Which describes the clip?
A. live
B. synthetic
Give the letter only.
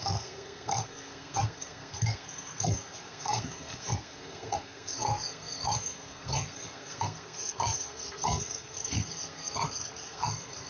B